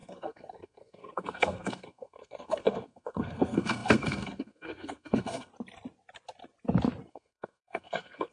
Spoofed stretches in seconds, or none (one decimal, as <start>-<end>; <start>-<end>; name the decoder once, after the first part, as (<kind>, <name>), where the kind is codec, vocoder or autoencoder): 0.0-5.5 (codec, SNAC); 7.1-8.3